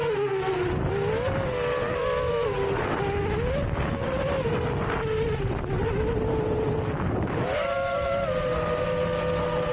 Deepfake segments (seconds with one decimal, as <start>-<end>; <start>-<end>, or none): none